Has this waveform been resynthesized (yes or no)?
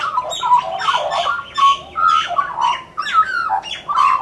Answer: no